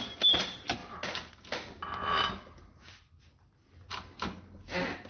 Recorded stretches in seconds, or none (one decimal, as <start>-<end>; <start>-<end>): 0.0-5.1